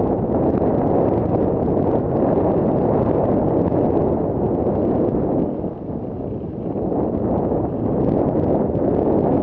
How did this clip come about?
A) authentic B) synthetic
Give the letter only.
A